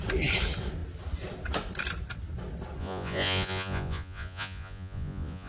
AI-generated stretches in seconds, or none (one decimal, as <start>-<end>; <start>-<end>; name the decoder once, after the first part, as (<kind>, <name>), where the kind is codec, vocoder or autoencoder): 2.8-5.5 (vocoder, Vocos)